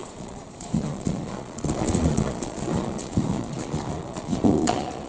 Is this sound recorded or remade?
remade